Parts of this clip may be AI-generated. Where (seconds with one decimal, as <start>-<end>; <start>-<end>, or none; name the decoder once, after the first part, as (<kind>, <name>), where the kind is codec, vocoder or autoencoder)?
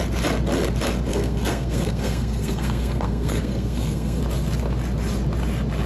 1.1-4.2 (codec, SNAC)